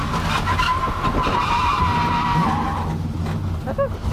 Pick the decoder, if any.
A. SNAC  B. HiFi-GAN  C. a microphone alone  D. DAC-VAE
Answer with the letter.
C